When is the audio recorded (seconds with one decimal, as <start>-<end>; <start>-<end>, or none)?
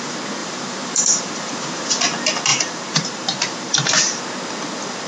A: 0.0-0.4; 1.9-2.5; 4.2-5.1